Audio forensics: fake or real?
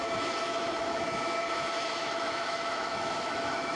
fake